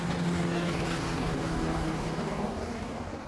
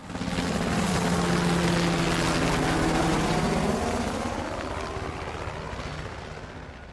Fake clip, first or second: first